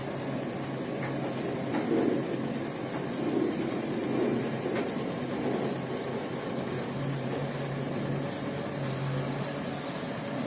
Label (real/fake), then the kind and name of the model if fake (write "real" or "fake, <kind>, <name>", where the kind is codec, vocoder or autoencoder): real